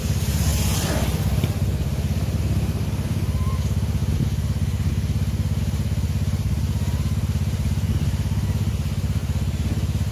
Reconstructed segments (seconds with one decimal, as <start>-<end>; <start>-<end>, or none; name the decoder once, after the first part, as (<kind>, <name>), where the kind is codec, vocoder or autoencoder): 0.0-0.5 (vocoder, BigVGAN v2); 2.4-4.0; 5.6-9.2